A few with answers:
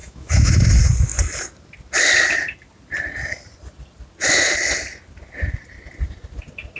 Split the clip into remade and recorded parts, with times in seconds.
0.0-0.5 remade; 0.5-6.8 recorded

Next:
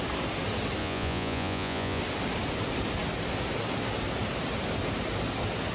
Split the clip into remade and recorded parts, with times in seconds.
0.0-0.8 recorded; 0.8-2.0 remade; 2.0-5.7 recorded

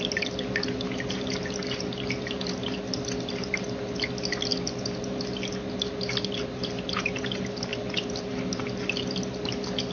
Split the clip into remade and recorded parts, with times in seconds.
0.0-9.9 recorded